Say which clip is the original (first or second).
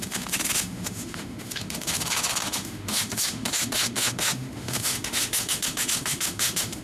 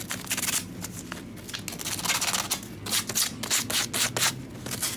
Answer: second